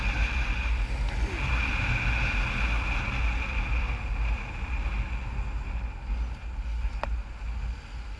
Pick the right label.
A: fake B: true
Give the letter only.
B